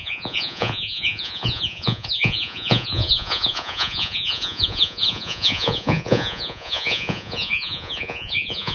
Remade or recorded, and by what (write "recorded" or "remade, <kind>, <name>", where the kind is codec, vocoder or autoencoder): remade, vocoder, Vocos